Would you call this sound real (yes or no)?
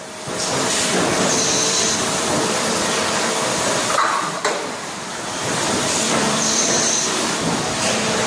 no